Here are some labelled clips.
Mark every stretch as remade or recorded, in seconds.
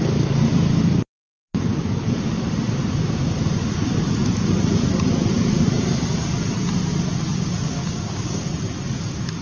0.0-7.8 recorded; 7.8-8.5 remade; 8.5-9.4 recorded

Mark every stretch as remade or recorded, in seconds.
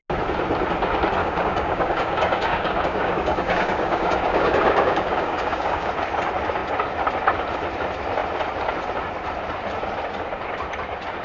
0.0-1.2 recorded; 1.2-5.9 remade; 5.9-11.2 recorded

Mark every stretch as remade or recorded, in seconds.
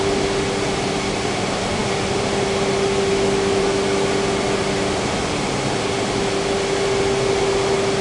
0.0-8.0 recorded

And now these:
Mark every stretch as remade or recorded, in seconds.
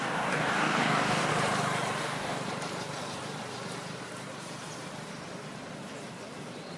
0.0-1.3 remade; 1.3-2.0 recorded; 2.0-2.4 remade; 2.4-6.8 recorded